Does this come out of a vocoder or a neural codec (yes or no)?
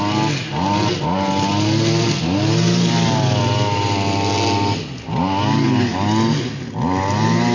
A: no